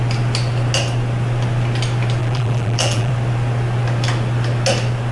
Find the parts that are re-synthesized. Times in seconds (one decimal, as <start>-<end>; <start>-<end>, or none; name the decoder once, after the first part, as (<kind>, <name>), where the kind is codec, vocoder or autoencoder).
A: 2.2-3.1 (vocoder, BigVGAN v2)